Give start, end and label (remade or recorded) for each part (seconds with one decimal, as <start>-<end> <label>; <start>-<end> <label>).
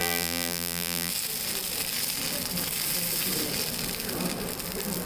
0.0-1.1 remade; 1.1-5.1 recorded